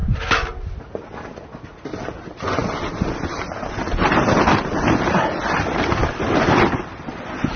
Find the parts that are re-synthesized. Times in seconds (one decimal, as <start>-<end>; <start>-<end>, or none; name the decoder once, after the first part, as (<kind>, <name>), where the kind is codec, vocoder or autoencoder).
none